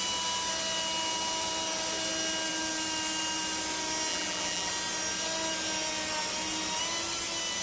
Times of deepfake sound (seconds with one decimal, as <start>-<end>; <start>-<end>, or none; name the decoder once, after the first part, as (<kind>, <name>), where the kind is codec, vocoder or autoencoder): 4.1-4.7 (vocoder, BigVGAN v2)